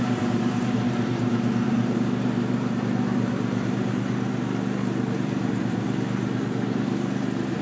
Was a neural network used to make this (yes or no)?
yes